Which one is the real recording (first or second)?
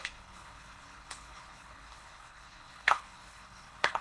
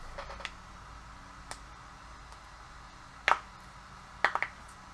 second